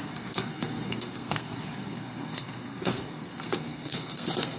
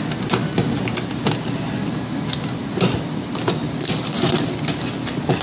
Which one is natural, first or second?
second